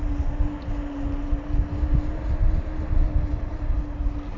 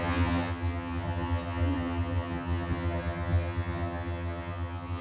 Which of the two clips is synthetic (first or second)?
second